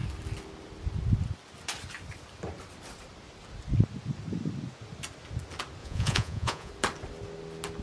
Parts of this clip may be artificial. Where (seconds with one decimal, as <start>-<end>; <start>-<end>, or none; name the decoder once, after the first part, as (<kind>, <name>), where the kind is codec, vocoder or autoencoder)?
5.8-6.7 (vocoder, Vocos)